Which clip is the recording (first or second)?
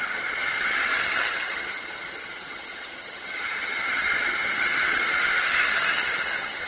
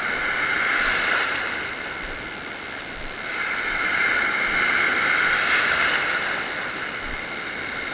second